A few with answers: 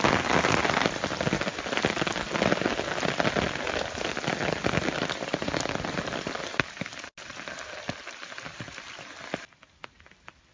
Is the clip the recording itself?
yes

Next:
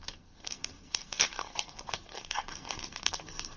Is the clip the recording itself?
no